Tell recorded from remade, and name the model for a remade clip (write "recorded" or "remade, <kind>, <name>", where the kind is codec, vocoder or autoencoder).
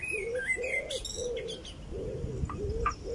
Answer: recorded